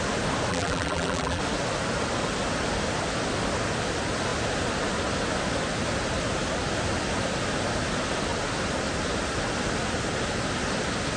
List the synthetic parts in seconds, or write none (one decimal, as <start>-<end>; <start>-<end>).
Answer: 0.5-1.4